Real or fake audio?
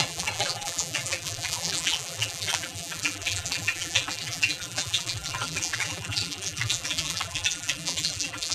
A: fake